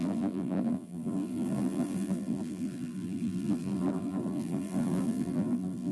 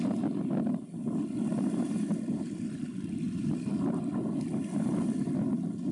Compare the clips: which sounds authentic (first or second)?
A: second